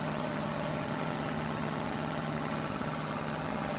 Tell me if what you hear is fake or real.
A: fake